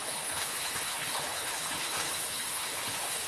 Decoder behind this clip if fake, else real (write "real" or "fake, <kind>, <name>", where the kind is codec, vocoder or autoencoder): fake, codec, HILCodec